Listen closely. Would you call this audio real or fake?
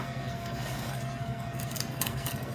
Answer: fake